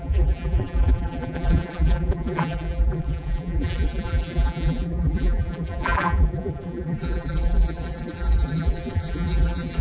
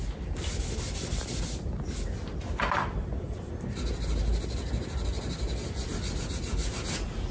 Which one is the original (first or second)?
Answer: second